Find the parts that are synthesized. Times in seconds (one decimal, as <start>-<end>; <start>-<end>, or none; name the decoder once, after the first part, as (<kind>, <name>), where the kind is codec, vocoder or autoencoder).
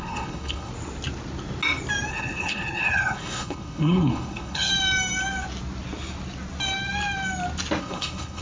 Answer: 0.0-0.7 (codec, HILCodec); 2.1-4.7; 7.8-8.4